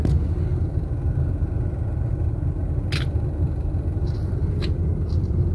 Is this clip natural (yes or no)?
yes